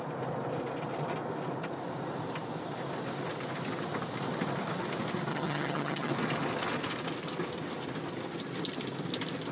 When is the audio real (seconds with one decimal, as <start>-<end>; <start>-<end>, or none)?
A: 0.0-5.3; 6.1-9.5